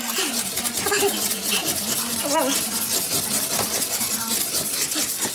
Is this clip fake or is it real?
real